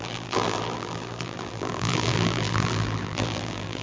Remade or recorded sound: remade